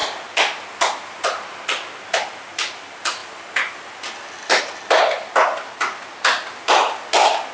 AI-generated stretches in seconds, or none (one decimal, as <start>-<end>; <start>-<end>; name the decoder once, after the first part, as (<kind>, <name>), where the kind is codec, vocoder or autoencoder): none